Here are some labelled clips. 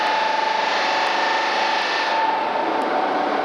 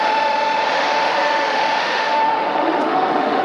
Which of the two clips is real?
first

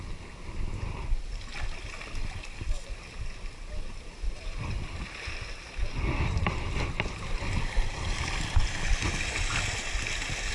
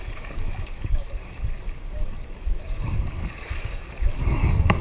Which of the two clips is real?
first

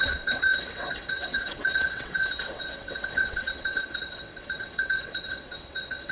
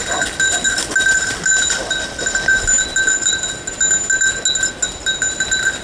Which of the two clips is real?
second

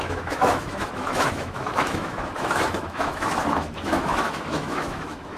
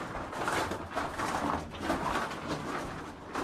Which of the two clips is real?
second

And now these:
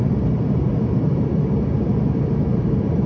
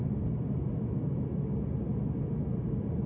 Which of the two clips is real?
second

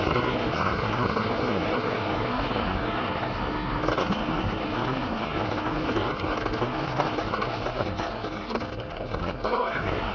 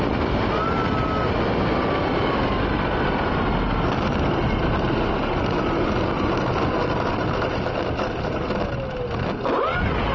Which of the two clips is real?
second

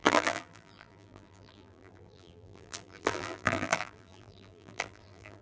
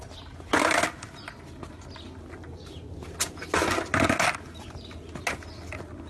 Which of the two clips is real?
second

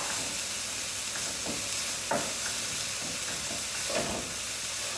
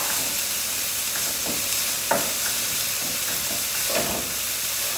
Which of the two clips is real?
first